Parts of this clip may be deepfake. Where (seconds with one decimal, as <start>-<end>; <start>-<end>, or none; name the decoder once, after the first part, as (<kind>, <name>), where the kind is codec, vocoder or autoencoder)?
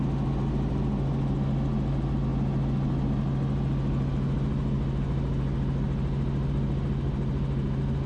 none